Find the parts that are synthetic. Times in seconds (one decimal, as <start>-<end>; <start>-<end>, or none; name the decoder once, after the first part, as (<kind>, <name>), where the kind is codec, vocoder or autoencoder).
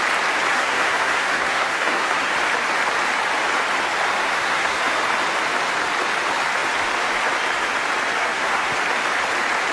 0.5-2.3 (codec, SNAC); 4.2-4.8; 8.2-8.7